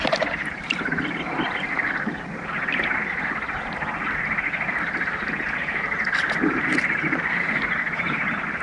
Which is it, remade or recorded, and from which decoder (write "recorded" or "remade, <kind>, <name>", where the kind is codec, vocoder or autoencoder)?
recorded